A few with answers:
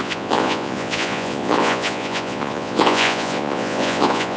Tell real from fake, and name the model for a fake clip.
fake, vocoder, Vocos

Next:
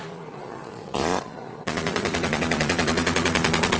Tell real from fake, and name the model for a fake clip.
fake, vocoder, Vocos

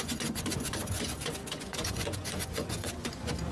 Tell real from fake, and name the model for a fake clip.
fake, vocoder, Vocos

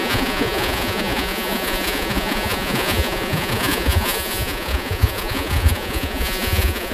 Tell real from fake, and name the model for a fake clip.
fake, vocoder, Vocos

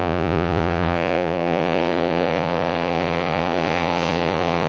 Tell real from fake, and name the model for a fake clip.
fake, vocoder, Vocos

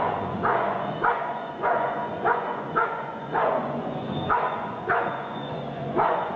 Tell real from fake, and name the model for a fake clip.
fake, vocoder, Vocos